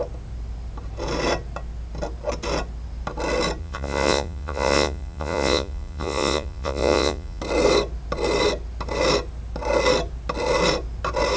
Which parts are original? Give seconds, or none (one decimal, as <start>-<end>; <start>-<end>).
0.0-3.6; 7.4-11.4